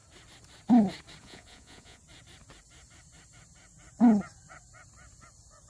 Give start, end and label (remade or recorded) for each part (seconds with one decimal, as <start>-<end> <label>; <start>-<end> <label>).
0.0-1.2 recorded; 1.2-2.0 remade; 2.0-5.7 recorded

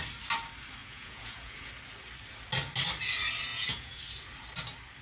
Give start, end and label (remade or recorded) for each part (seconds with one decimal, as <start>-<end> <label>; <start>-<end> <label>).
0.0-0.8 recorded; 0.8-1.7 remade; 1.7-3.5 recorded; 3.5-4.0 remade; 4.0-5.0 recorded